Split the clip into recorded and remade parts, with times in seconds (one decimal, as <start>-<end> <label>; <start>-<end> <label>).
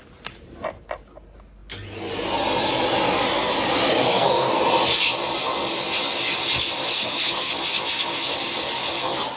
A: 0.0-4.0 recorded; 4.0-4.6 remade; 4.6-6.9 recorded; 6.9-7.5 remade; 7.5-9.4 recorded